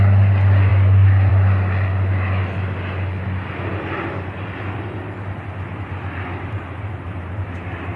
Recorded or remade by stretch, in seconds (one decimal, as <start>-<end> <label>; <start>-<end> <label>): 0.0-8.0 recorded